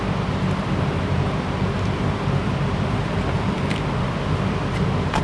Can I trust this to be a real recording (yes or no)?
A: no